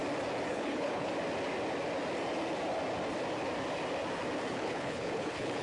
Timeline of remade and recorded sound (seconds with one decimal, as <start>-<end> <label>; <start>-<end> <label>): 0.0-0.5 recorded; 0.5-1.1 remade; 1.1-4.5 recorded; 4.5-5.6 remade